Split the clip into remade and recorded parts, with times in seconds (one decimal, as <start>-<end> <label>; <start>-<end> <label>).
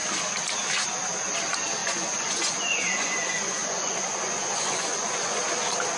0.0-1.8 recorded; 1.8-5.4 remade; 5.4-6.0 recorded